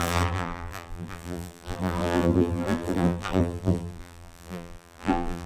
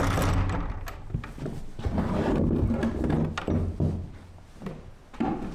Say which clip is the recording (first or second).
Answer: second